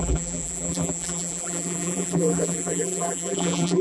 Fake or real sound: fake